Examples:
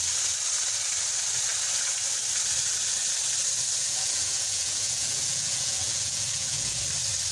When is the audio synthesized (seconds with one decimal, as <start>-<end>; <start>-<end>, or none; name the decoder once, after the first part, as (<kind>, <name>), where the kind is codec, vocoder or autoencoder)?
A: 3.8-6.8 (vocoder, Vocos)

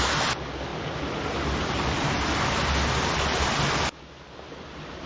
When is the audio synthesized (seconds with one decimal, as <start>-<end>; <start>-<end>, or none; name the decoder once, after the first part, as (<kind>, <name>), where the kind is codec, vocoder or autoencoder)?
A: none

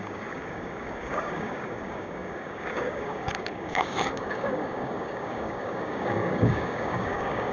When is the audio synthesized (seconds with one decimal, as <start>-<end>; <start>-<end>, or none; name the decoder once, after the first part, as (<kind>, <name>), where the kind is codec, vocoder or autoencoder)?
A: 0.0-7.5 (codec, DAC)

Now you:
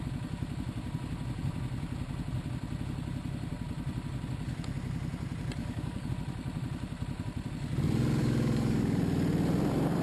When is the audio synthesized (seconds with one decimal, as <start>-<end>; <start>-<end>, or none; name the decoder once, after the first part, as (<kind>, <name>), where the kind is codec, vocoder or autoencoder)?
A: 5.6-6.1 (codec, DAC); 8.2-9.0